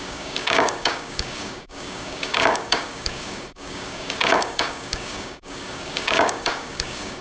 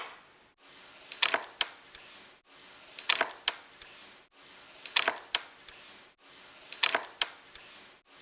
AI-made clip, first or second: first